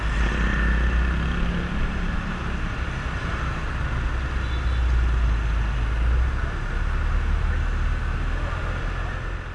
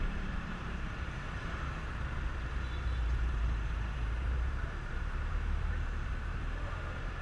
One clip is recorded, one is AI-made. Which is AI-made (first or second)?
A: second